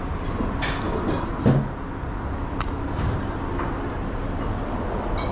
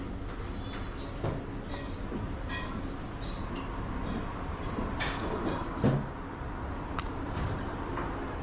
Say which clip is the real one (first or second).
first